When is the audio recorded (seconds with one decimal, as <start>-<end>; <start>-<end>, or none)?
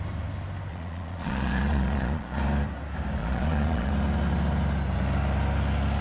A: 0.0-0.7; 2.4-3.2; 3.9-6.0